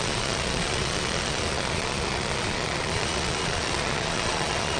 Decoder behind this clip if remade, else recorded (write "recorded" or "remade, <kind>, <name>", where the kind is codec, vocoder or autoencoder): remade, vocoder, Vocos